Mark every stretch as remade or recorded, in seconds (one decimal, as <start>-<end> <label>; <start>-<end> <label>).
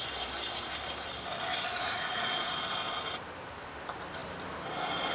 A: 0.0-1.7 recorded; 1.7-2.5 remade; 2.5-5.1 recorded